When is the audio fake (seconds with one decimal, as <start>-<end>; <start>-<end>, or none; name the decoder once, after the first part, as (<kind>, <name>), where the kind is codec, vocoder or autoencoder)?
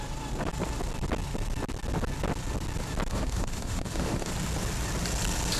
3.1-4.3 (autoencoder, DAC-VAE)